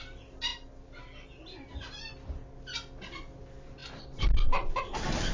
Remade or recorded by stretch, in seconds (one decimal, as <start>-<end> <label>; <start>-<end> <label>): 0.0-5.3 recorded